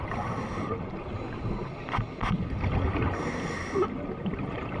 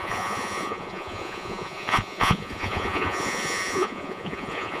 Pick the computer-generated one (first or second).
second